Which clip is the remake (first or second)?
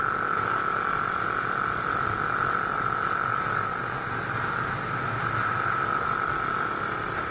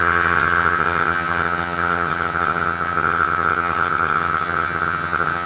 second